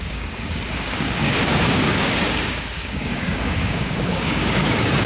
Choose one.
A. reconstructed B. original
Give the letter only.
A